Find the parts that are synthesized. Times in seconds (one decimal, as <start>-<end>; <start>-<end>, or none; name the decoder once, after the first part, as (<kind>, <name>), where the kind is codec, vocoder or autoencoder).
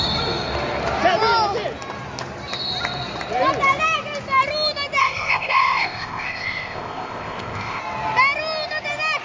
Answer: 5.0-7.8 (codec, ZipCodec)